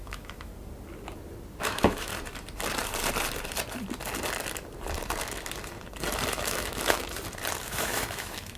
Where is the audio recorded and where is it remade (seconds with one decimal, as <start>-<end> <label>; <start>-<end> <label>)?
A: 0.0-0.5 remade; 0.5-1.6 recorded; 1.6-2.1 remade; 2.1-6.3 recorded; 6.3-7.0 remade; 7.0-7.6 recorded; 7.6-8.6 remade